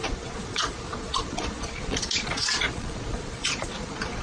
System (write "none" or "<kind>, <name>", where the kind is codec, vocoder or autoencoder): vocoder, Vocos